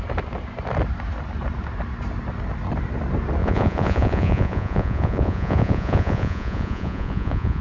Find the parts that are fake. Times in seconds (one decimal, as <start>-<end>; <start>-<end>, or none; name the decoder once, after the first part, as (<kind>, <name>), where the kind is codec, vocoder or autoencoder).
3.4-7.6 (vocoder, Vocos)